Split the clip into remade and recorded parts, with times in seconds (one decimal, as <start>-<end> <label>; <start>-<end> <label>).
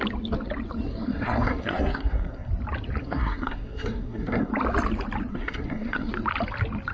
0.0-0.9 recorded; 0.9-2.5 remade; 2.5-3.0 recorded; 3.0-4.5 remade; 4.5-5.3 recorded; 5.3-6.1 remade; 6.1-6.9 recorded